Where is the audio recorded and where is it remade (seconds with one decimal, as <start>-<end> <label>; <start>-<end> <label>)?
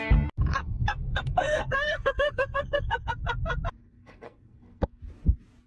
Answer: 0.0-0.6 recorded; 0.6-3.1 remade; 3.1-3.8 recorded; 3.8-5.0 remade; 5.0-5.7 recorded